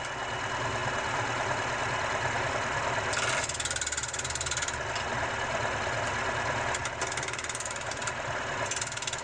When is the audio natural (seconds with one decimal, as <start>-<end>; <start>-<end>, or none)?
0.0-9.2